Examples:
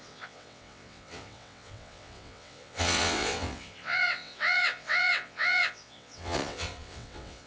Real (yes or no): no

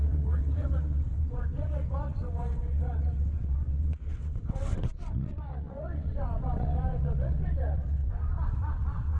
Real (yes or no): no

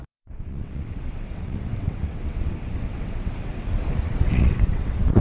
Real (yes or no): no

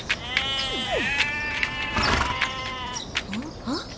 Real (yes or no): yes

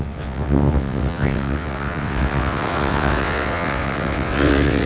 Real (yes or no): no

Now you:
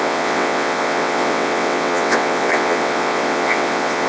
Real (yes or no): no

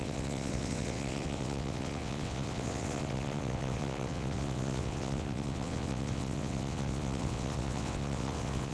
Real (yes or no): no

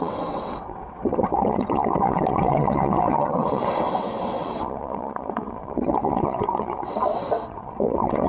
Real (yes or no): no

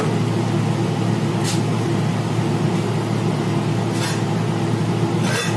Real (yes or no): yes